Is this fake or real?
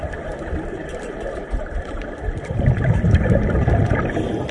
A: fake